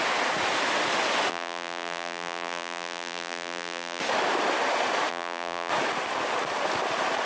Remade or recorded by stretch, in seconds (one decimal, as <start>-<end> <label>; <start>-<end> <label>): 0.0-1.3 recorded; 1.3-4.0 remade; 4.0-5.1 recorded; 5.1-5.7 remade; 5.7-7.3 recorded